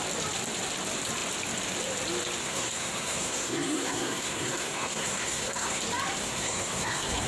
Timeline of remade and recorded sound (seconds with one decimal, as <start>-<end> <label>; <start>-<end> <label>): 0.0-2.4 recorded; 2.4-5.8 remade; 5.8-6.2 recorded; 6.2-7.3 remade